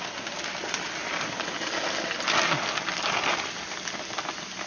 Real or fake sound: real